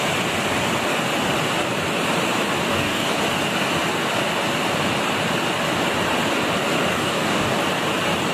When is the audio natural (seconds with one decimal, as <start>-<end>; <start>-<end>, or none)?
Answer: 0.0-2.7; 3.2-6.9; 7.6-8.3